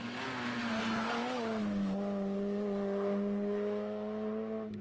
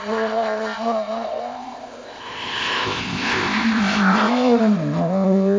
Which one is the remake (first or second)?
second